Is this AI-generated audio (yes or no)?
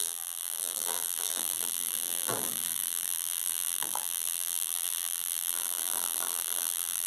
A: yes